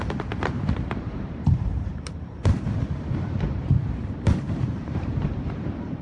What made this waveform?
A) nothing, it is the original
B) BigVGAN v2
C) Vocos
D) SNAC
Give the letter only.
B